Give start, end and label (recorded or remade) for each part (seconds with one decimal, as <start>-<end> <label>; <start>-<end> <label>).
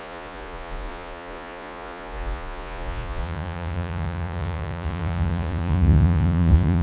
0.0-6.8 remade